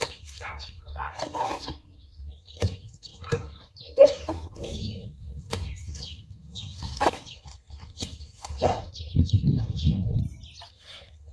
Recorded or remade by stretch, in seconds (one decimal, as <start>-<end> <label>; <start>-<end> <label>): 0.0-10.2 remade; 10.2-10.7 recorded; 10.7-11.3 remade